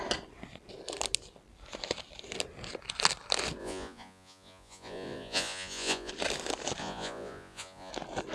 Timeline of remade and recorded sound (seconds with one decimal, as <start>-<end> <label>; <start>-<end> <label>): 0.0-3.6 recorded; 3.6-6.1 remade; 6.1-6.8 recorded; 6.8-7.9 remade; 7.9-8.3 recorded